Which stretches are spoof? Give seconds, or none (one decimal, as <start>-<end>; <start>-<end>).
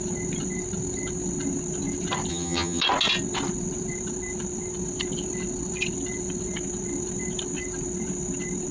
2.3-2.8